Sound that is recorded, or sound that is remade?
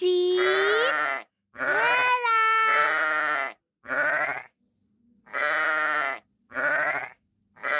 recorded